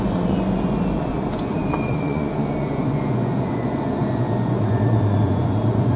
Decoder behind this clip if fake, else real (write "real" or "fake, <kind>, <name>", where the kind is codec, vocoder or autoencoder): fake, vocoder, Vocos